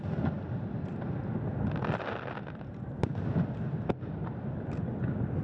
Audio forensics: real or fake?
real